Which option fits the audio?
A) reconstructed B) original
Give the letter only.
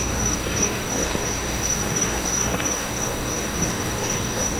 A